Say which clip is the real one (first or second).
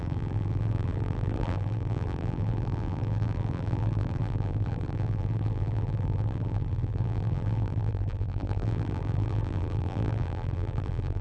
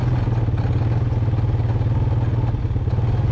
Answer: second